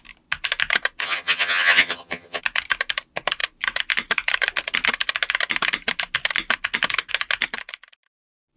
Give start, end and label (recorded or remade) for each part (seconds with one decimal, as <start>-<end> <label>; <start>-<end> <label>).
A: 0.0-1.0 recorded; 1.0-2.4 remade; 2.4-8.6 recorded